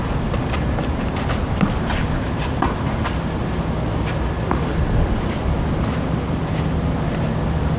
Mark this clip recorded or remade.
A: recorded